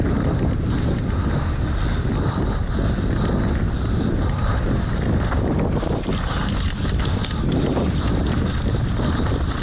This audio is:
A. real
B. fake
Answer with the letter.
A